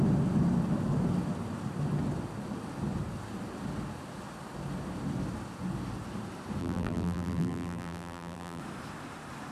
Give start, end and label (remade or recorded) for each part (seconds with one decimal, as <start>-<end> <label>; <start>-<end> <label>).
0.0-6.6 recorded; 6.6-8.6 remade; 8.6-9.5 recorded